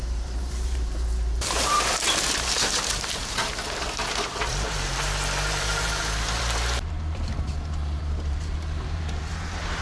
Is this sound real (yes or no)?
no